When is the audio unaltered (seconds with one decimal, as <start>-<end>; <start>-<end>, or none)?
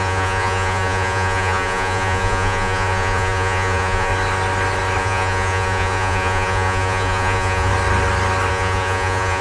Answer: 4.1-5.0; 7.7-8.5